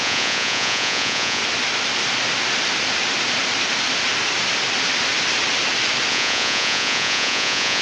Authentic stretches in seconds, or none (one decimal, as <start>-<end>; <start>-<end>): 1.4-6.1